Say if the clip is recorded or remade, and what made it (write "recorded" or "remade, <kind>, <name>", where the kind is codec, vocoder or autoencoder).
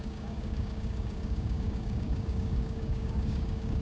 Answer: remade, codec, DAC